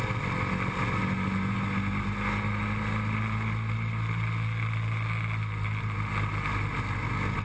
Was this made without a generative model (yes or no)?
yes